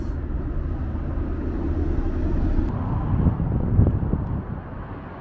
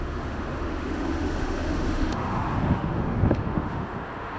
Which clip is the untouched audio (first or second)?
first